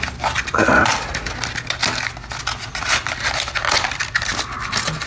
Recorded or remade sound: recorded